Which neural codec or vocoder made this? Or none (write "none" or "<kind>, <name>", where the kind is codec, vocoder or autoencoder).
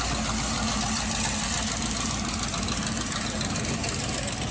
none